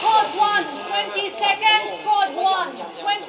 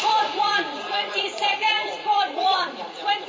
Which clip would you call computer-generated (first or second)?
second